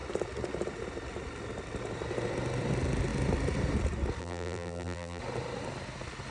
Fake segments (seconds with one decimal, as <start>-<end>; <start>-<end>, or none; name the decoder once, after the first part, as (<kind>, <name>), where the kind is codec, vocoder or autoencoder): 4.2-5.2 (vocoder, BigVGAN v2)